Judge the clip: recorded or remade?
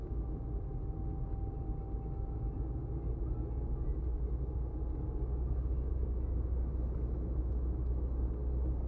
recorded